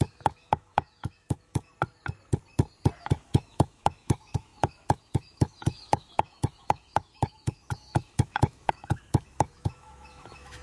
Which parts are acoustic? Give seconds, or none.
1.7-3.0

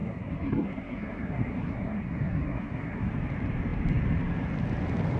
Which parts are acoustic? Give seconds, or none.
3.1-5.2

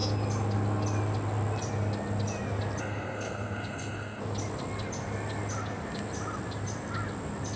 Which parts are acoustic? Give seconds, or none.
0.0-2.8; 4.2-7.6

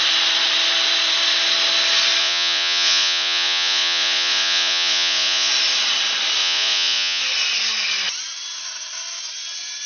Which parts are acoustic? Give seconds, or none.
0.0-2.2; 5.5-6.4; 7.2-9.9

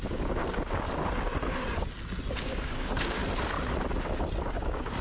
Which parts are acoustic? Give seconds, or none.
0.4-2.4; 3.2-4.4

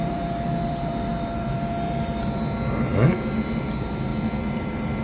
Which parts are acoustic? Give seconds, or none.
2.9-3.6; 4.1-4.6